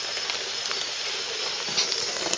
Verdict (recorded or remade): recorded